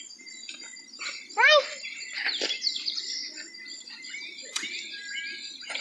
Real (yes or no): yes